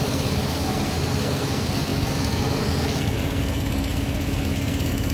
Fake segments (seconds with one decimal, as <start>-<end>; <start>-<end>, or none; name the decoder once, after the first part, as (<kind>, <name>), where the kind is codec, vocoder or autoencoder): 0.0-5.1 (codec, SNAC)